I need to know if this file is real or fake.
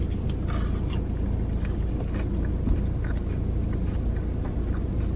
real